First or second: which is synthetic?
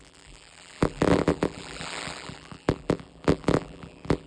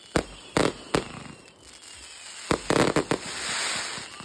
first